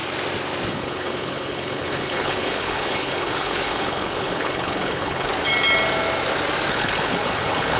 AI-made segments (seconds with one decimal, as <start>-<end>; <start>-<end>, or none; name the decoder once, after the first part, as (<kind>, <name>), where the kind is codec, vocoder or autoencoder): 0.7-5.3 (codec, HILCodec); 6.7-7.8